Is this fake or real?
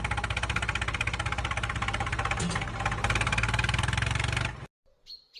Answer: real